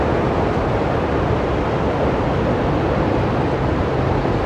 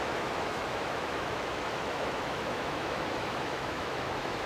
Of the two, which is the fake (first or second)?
second